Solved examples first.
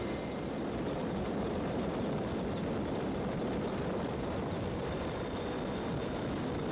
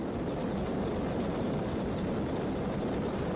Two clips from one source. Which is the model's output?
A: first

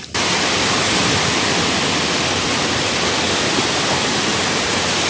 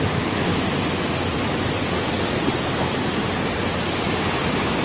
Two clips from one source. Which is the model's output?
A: first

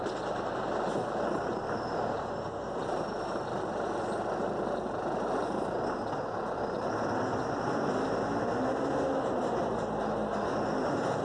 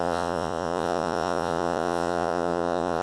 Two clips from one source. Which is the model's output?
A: second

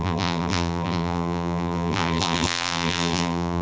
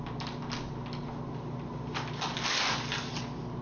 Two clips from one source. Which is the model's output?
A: first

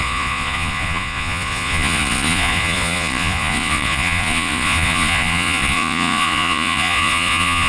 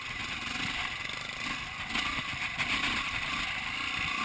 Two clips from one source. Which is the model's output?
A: first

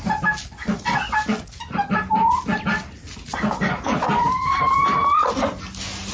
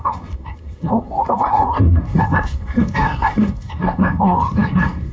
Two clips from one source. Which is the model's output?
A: second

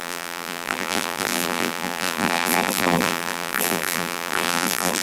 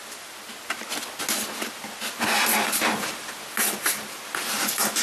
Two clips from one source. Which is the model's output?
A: first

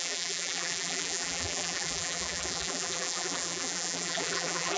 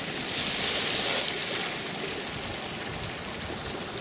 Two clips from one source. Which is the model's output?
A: first